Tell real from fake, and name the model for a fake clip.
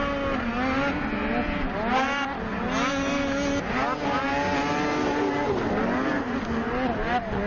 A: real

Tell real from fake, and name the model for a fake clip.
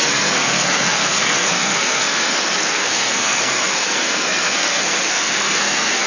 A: fake, codec, SNAC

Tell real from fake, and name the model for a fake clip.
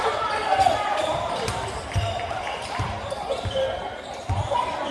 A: fake, vocoder, BigVGAN v2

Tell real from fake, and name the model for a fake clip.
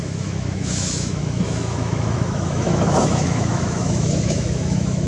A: fake, autoencoder, DAC-VAE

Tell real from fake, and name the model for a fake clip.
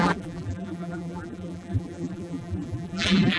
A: fake, vocoder, BigVGAN v2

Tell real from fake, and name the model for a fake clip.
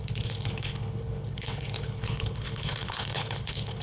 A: fake, codec, HILCodec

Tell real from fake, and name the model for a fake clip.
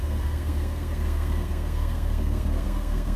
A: fake, codec, SNAC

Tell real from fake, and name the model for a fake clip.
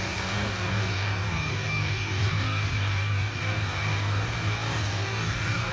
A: fake, codec, DAC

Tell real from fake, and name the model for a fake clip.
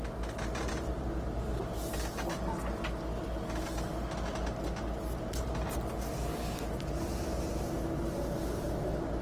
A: real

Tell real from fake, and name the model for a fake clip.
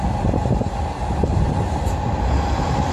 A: real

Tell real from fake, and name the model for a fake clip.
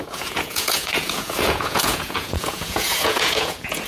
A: fake, vocoder, Vocos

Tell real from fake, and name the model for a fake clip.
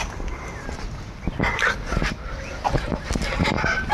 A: real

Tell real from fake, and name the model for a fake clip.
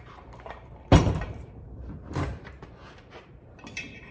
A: fake, vocoder, BigVGAN v2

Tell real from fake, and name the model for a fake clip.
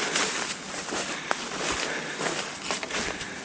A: real